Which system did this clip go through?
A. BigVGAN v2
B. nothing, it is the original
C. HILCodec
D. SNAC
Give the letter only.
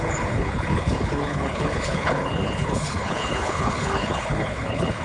C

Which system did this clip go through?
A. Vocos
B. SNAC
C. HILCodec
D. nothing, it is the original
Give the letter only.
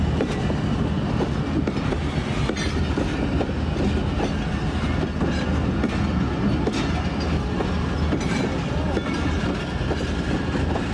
D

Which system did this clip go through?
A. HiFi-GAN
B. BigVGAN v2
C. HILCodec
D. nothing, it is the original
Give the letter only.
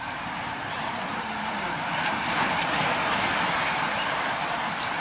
D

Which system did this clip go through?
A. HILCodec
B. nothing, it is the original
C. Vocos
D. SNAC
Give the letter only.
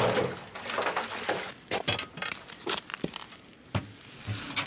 B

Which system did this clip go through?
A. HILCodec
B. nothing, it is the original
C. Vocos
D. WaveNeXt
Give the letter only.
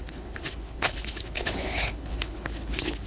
A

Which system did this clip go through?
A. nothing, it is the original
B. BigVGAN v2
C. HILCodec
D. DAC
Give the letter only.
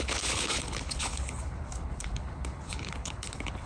C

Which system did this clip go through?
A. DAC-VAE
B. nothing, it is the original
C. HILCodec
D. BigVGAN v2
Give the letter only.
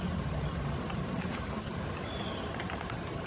B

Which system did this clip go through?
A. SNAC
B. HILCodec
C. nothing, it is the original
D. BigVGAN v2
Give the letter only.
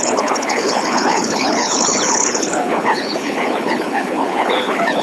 B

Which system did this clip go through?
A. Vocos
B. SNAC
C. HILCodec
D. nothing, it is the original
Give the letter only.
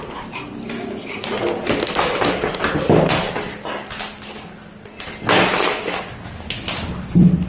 D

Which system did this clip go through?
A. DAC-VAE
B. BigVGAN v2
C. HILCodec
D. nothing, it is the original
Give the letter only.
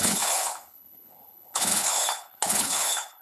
C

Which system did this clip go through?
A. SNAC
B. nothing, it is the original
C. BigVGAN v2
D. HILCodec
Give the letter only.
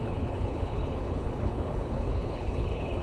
D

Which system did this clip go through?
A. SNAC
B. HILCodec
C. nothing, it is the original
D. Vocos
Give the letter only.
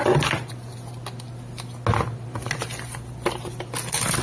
C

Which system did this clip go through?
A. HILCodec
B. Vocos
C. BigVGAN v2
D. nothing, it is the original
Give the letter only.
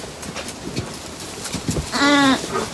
D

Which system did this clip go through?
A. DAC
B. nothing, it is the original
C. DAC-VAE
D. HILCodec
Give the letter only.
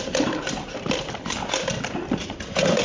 B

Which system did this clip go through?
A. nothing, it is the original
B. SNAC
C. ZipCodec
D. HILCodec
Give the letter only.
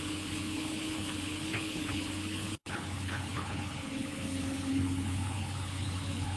D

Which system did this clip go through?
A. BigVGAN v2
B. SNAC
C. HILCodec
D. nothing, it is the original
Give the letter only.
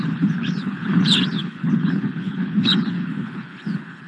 C